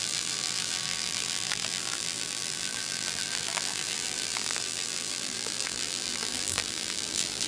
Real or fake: fake